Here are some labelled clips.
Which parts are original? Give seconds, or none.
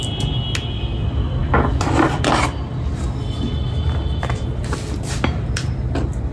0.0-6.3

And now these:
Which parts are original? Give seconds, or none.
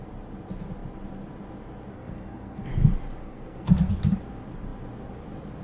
0.0-1.9; 2.7-3.2; 3.9-5.6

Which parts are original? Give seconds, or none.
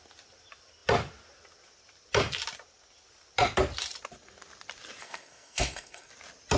0.0-5.0; 6.1-6.6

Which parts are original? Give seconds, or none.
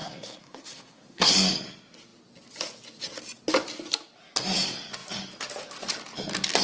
1.3-6.6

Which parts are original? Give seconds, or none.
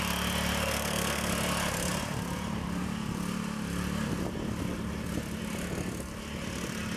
0.0-0.6; 1.3-7.0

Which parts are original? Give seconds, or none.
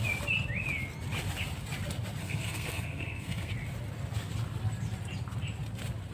0.0-2.2; 3.5-6.1